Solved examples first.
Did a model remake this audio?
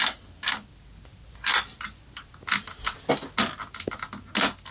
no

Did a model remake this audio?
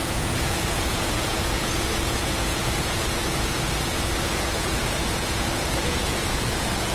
yes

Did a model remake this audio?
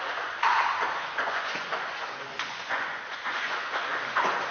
yes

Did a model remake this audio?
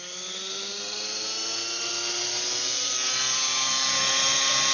no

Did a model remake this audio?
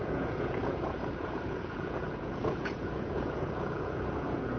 yes